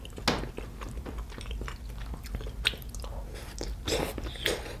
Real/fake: real